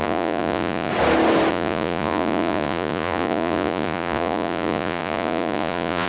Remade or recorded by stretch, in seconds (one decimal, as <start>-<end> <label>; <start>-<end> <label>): 0.0-0.9 remade; 0.9-1.5 recorded; 1.5-6.1 remade